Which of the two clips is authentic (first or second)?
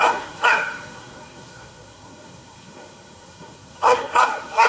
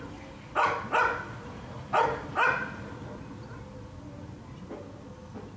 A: second